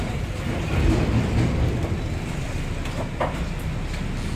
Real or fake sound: real